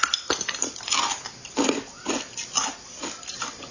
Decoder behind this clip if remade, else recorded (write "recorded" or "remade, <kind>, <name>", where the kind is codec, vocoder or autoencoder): remade, vocoder, BigVGAN v2